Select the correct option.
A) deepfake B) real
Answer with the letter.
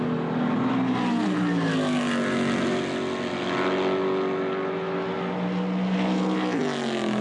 B